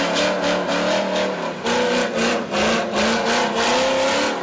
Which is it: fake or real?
real